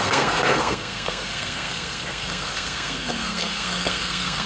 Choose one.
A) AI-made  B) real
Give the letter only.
A